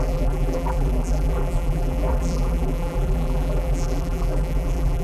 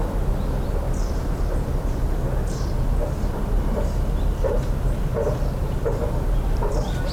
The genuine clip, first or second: second